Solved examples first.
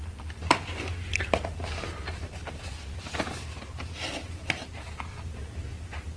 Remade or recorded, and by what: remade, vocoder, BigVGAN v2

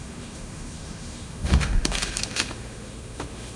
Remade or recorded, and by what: remade, autoencoder, DAC-VAE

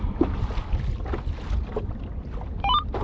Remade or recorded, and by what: recorded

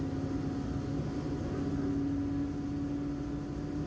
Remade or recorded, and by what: recorded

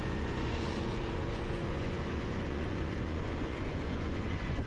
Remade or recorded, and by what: remade, vocoder, Vocos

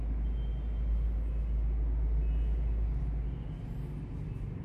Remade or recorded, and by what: recorded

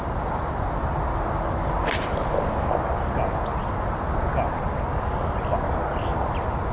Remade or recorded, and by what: recorded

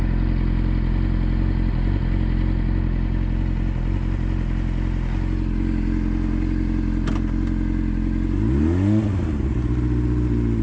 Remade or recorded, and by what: recorded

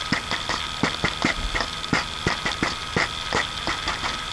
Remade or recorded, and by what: recorded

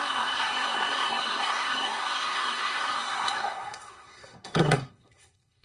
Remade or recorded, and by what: remade, codec, SNAC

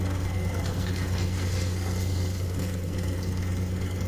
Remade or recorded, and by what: remade, codec, SNAC